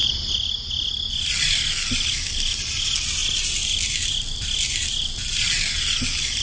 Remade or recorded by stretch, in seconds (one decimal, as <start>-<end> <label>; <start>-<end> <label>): 0.0-6.4 recorded